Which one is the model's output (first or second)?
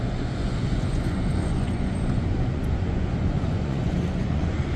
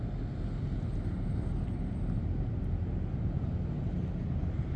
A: first